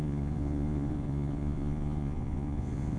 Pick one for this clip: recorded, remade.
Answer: remade